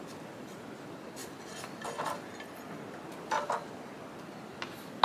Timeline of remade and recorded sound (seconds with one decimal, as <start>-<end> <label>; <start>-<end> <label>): 0.0-5.0 recorded